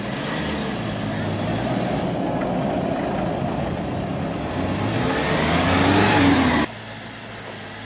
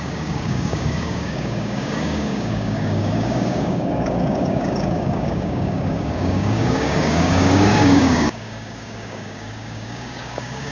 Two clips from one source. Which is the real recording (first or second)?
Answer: first